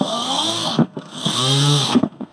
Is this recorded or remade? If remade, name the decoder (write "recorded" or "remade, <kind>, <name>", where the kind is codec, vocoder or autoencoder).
remade, codec, SNAC